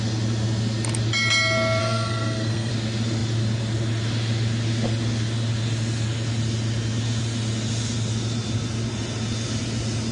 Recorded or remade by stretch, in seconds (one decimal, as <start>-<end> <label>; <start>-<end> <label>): 0.0-1.8 recorded; 1.8-2.7 remade; 2.7-10.1 recorded